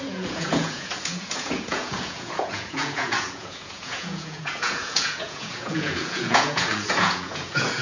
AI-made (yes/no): yes